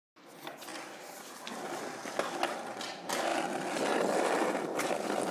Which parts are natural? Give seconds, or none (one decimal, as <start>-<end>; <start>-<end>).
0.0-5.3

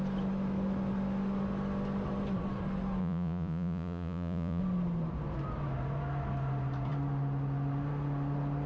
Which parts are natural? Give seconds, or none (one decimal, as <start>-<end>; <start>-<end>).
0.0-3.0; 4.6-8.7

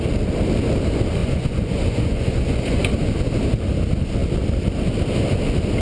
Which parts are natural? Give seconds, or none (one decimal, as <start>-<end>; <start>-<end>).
0.0-1.2; 2.8-5.8

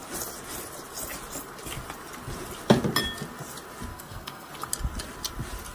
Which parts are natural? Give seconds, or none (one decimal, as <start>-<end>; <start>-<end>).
0.0-3.9; 4.5-5.7

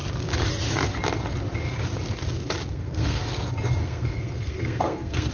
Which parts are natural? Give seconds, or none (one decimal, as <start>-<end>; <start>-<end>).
0.0-2.7; 3.2-3.8